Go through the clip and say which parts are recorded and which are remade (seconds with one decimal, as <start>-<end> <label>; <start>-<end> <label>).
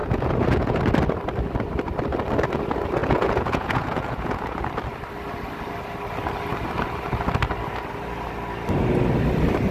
0.0-0.8 remade; 0.8-3.0 recorded; 3.0-4.6 remade; 4.6-9.7 recorded